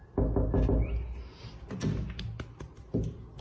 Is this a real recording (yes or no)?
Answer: yes